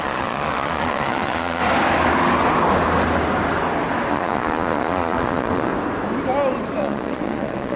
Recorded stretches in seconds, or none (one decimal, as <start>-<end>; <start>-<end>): 1.6-4.1; 5.7-6.8